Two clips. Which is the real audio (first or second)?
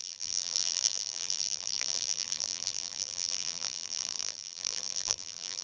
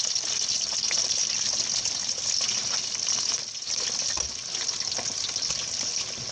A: second